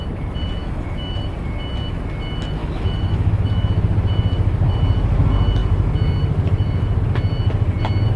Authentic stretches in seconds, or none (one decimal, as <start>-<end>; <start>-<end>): 0.0-0.6; 1.2-2.6; 3.4-8.2